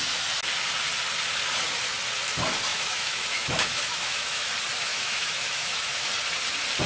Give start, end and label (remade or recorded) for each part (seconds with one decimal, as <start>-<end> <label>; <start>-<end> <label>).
0.0-2.7 recorded; 2.7-4.5 remade; 4.5-4.9 recorded; 4.9-6.1 remade; 6.1-6.9 recorded